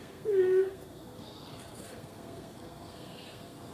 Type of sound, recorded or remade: remade